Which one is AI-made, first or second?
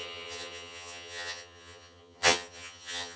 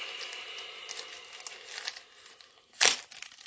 first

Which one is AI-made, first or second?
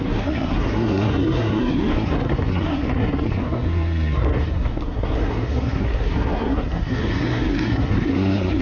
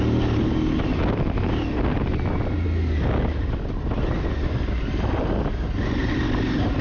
first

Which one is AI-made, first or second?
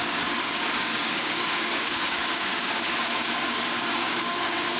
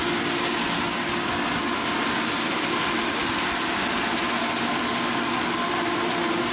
first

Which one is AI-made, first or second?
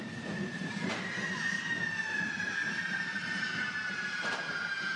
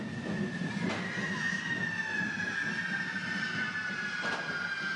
first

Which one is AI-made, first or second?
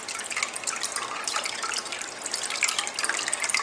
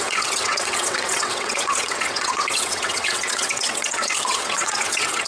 second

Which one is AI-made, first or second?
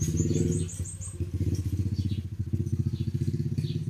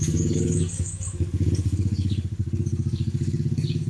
second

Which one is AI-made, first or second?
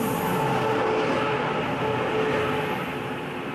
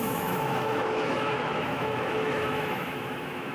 second